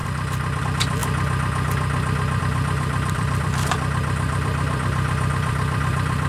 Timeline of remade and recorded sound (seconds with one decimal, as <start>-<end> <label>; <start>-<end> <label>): 0.0-0.6 recorded; 0.6-1.0 remade; 1.0-2.4 recorded; 2.4-6.3 remade